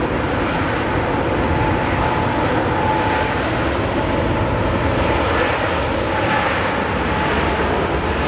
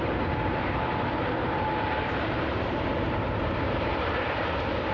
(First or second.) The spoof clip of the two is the second